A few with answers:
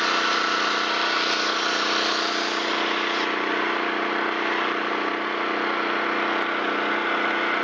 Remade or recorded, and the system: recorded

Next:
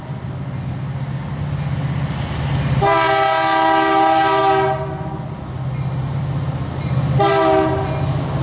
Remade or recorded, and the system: recorded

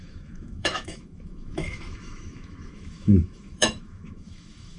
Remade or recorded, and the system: remade, autoencoder, DAC-VAE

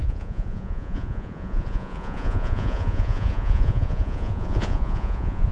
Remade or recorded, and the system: remade, vocoder, Vocos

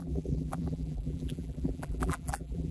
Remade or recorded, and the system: remade, vocoder, BigVGAN v2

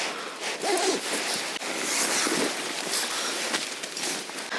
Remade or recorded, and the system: recorded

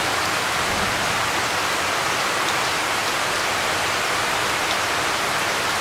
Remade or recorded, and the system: recorded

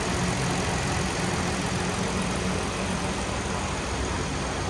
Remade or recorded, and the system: recorded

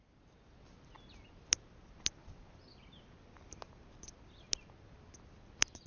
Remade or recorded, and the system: recorded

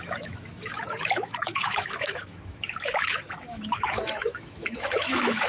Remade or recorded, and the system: remade, autoencoder, DAC-VAE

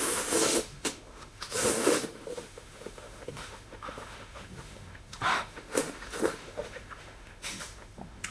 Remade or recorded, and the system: remade, autoencoder, DAC-VAE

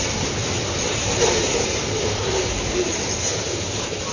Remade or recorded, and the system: recorded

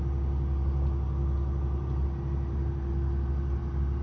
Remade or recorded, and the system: recorded